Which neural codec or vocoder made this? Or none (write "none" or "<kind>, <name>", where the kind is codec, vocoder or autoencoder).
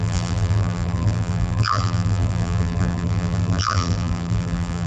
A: vocoder, BigVGAN v2